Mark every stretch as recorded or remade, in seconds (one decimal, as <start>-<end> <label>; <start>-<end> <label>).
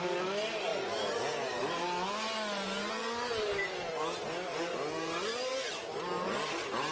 0.0-6.9 recorded